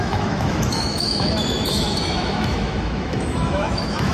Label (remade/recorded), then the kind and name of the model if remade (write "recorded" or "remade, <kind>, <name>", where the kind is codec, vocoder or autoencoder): remade, autoencoder, DAC-VAE